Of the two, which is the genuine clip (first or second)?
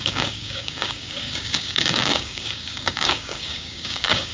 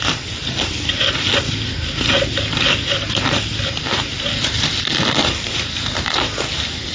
second